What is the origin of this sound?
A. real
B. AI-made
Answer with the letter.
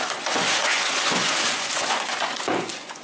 B